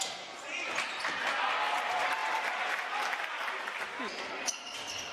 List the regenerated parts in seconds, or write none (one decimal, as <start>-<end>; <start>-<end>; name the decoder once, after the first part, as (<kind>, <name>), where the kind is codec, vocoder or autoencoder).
none